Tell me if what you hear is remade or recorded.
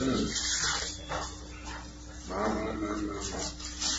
recorded